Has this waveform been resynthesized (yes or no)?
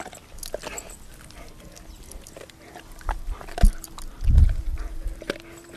no